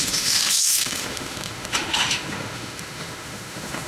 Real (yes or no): no